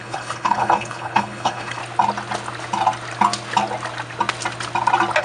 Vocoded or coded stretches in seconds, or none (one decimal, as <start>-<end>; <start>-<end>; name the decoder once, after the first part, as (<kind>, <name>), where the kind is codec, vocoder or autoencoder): 0.0-1.8 (codec, HILCodec)